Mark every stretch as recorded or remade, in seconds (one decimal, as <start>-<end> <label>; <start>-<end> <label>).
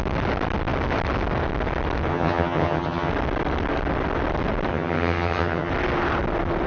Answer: 0.0-2.1 recorded; 2.1-3.1 remade; 3.1-4.7 recorded; 4.7-5.7 remade; 5.7-6.7 recorded